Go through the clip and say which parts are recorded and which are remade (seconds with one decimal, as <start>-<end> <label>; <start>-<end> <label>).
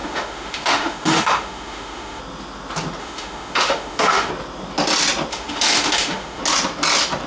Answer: 0.0-2.2 remade; 2.2-3.0 recorded; 3.0-4.3 remade; 4.3-5.3 recorded; 5.3-6.4 remade; 6.4-7.3 recorded